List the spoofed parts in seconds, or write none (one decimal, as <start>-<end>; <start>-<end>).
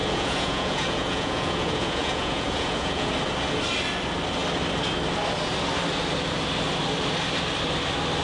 0.0-3.1